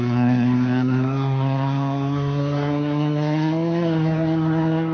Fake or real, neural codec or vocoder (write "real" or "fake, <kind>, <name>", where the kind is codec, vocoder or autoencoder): fake, codec, SNAC